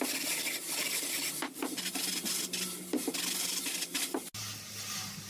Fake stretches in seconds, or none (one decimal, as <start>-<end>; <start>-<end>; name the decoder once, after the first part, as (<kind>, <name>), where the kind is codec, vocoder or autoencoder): none